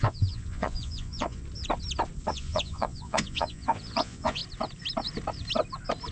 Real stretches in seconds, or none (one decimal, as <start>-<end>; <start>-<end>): 1.4-2.3; 4.4-6.1

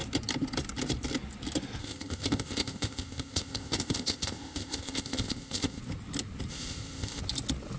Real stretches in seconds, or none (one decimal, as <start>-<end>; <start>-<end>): 0.0-1.8; 5.8-6.5; 7.2-7.8

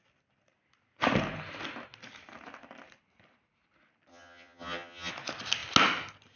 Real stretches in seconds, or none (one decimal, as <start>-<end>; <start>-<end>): 0.0-4.1; 5.1-6.4

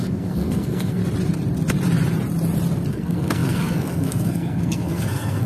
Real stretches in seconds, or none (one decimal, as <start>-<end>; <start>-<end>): 1.0-2.9

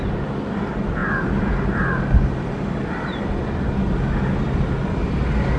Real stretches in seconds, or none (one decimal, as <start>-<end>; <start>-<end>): 0.0-5.6

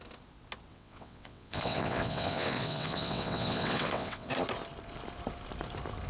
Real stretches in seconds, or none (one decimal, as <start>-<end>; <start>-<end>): 0.0-0.7; 4.3-6.1